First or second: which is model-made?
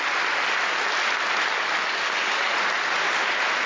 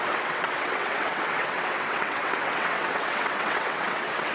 second